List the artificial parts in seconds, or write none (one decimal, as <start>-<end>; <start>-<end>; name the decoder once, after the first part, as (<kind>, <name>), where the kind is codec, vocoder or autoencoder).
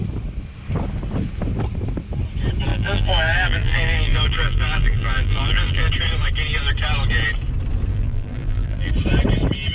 2.7-5.9 (vocoder, BigVGAN v2); 7.9-8.9